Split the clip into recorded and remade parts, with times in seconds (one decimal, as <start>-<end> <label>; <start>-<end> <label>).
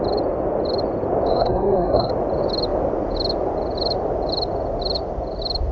0.0-1.3 recorded; 1.3-2.1 remade; 2.1-5.7 recorded